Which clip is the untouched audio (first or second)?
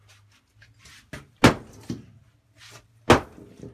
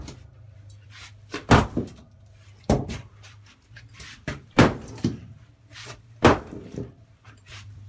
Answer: first